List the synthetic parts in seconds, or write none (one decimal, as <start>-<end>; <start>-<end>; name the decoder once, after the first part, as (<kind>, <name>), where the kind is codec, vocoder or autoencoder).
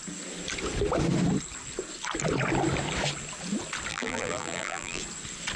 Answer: 3.9-5.0 (vocoder, BigVGAN v2)